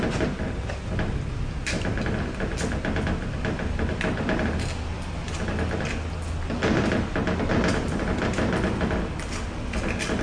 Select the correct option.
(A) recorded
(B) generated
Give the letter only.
A